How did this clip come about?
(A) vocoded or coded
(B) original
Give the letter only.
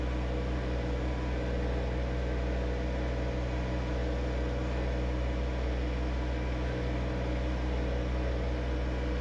B